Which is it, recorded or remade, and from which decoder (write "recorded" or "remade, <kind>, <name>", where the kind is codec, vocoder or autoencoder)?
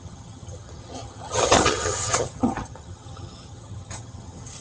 remade, vocoder, HiFi-GAN